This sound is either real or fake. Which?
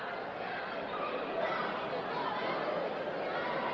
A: real